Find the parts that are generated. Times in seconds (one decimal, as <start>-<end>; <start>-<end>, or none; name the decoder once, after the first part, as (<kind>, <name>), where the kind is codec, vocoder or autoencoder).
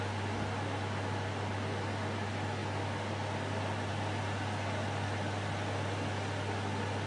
none